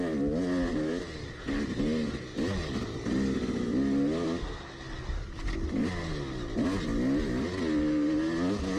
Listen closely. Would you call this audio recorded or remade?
recorded